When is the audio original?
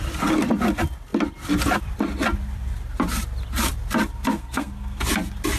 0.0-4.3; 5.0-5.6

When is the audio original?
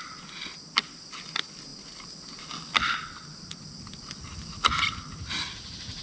0.0-6.0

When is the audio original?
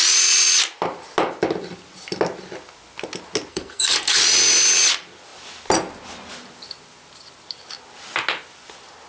0.0-3.5; 4.2-9.1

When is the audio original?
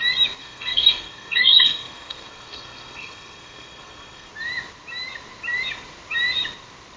0.0-0.4; 4.3-7.0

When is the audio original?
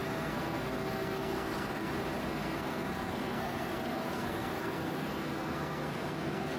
1.9-2.3